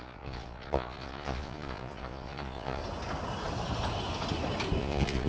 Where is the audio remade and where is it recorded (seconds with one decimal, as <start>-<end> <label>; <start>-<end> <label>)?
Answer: 0.0-2.8 remade; 2.8-4.8 recorded; 4.8-5.3 remade